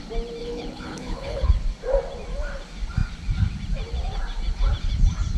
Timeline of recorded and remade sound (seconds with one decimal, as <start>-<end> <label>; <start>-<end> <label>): 0.0-0.4 recorded; 0.4-1.5 remade; 1.5-5.4 recorded